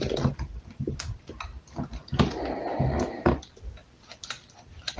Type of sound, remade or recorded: recorded